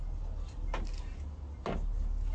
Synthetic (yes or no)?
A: no